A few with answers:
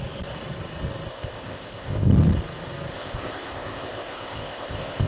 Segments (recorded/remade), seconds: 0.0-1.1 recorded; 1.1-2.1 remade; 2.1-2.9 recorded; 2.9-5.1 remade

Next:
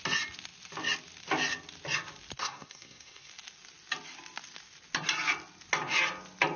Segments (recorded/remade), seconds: 0.0-2.4 recorded; 2.4-3.3 remade; 3.3-6.6 recorded